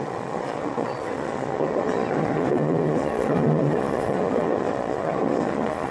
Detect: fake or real fake